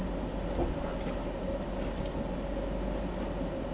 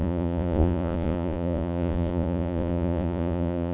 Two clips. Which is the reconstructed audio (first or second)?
second